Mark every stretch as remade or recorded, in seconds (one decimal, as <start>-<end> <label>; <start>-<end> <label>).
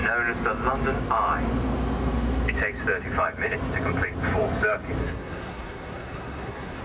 0.0-5.0 recorded; 5.0-6.8 remade